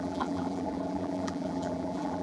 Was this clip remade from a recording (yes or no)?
yes